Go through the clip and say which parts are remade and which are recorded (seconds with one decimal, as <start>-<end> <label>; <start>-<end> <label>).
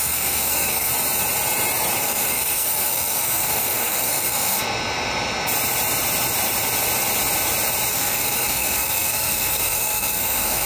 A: 0.0-0.9 remade; 0.9-2.0 recorded; 2.0-4.6 remade; 4.6-7.9 recorded; 7.9-10.7 remade